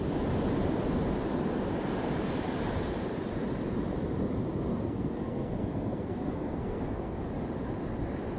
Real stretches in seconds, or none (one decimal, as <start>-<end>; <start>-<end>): 0.0-4.7; 7.2-8.4